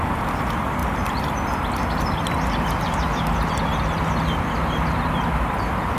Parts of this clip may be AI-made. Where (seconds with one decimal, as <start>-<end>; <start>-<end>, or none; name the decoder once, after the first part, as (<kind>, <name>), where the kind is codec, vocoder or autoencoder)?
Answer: none